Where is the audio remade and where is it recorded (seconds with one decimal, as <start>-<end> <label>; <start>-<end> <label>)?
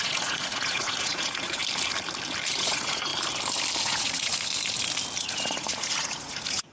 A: 0.0-1.6 remade; 1.6-2.5 recorded; 2.5-3.1 remade; 3.1-3.8 recorded; 3.8-4.3 remade; 4.3-5.2 recorded; 5.2-6.7 remade